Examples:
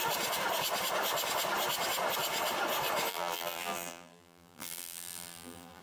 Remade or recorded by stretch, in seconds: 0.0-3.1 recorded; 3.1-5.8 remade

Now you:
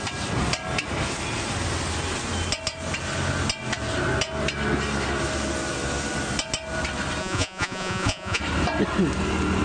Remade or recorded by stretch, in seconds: 0.0-7.2 recorded; 7.2-8.4 remade; 8.4-9.6 recorded

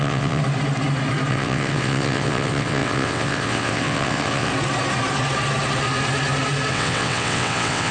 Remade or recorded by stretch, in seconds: 0.0-0.4 remade; 0.4-1.3 recorded; 1.3-4.5 remade; 4.5-6.7 recorded; 6.7-7.9 remade